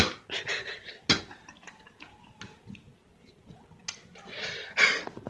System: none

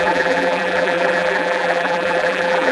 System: vocoder, BigVGAN v2